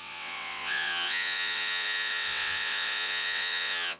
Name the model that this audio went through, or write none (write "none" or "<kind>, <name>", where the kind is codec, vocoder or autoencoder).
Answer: vocoder, WaveNeXt